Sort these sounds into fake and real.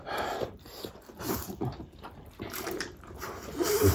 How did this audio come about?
fake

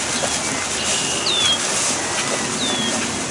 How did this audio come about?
real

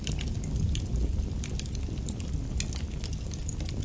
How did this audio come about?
real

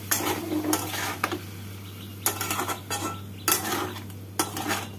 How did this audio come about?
real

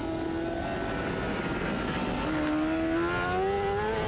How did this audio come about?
real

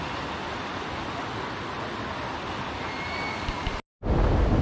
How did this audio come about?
real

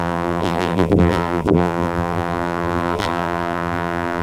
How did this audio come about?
fake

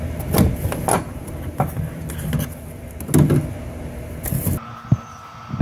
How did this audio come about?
real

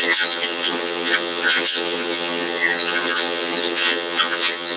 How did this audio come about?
fake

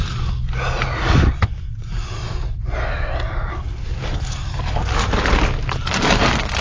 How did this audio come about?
real